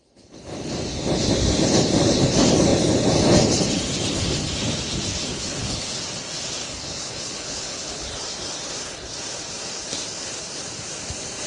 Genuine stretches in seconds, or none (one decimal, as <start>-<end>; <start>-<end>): 0.0-5.3; 6.0-6.6; 8.1-11.5